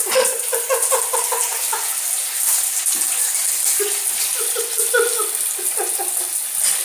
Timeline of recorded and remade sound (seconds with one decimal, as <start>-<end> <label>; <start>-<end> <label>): 0.0-6.8 recorded

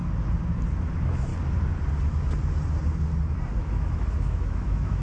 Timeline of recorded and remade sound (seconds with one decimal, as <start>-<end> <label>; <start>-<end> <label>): 0.0-0.9 recorded; 0.9-1.3 remade; 1.3-3.6 recorded; 3.6-5.0 remade

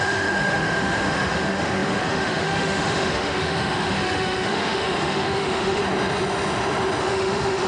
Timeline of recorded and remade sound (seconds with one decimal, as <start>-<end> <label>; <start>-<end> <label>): 0.0-5.8 remade; 5.8-7.0 recorded; 7.0-7.7 remade

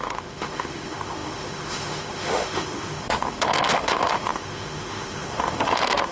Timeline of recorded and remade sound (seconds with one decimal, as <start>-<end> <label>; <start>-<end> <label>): 0.0-6.1 remade

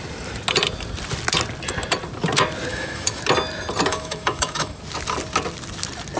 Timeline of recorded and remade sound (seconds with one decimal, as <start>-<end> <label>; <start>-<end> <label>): 0.0-2.7 recorded; 2.7-3.2 remade; 3.2-3.9 recorded; 3.9-4.8 remade; 4.8-6.2 recorded

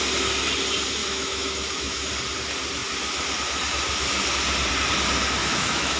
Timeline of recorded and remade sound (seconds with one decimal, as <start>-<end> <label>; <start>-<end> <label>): 0.0-1.0 recorded; 1.0-2.1 remade; 2.1-5.4 recorded; 5.4-6.0 remade

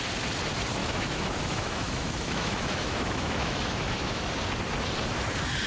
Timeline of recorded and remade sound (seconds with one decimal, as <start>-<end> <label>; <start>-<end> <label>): 0.0-0.8 recorded; 0.8-4.2 remade; 4.2-5.7 recorded